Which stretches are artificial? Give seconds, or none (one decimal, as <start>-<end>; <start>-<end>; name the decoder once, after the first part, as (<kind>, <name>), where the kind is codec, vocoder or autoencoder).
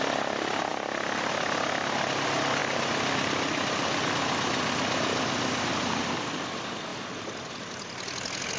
none